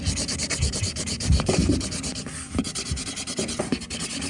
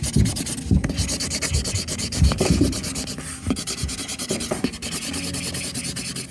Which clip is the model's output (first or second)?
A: first